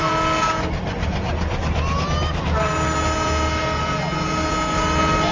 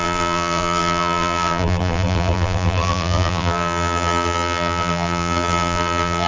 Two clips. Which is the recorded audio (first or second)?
first